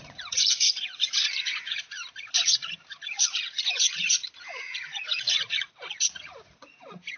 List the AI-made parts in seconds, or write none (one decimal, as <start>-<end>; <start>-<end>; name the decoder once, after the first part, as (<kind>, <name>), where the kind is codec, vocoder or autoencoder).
0.0-2.0 (vocoder, Vocos); 3.2-7.2